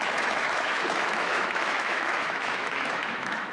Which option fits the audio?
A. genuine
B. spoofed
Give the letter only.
B